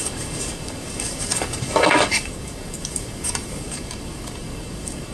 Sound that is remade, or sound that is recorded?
remade